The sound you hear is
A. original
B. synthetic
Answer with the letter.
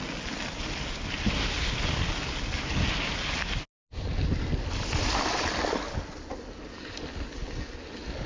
A